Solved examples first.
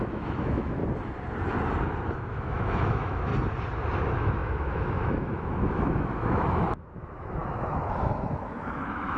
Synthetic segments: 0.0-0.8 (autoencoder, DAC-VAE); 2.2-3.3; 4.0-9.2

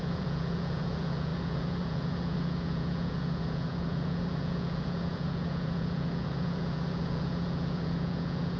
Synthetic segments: 0.0-8.6 (vocoder, Vocos)

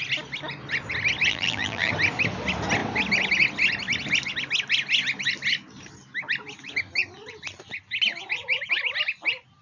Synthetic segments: 1.3-1.9 (vocoder, BigVGAN v2)

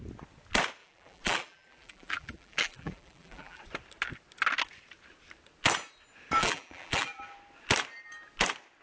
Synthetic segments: 0.8-3.6 (vocoder, BigVGAN v2); 6.4-7.2